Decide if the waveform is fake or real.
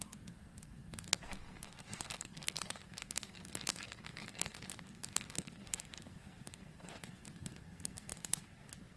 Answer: fake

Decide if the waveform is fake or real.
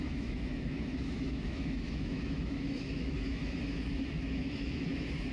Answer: fake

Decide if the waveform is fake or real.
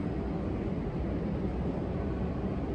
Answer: real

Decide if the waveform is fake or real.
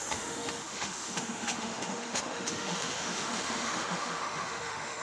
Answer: fake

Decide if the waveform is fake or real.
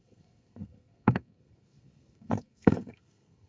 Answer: fake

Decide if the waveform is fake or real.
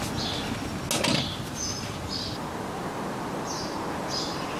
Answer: real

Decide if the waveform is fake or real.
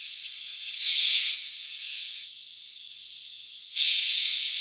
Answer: fake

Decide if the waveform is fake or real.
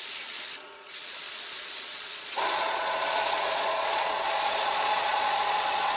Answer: fake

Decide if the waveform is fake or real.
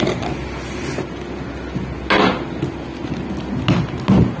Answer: real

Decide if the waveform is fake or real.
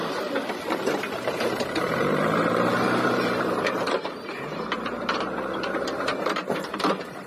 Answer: fake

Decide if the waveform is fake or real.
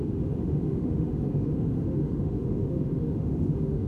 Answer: fake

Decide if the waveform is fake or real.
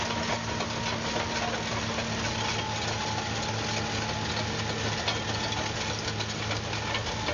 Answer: real